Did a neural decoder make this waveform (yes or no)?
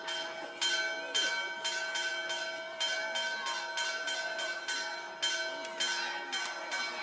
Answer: no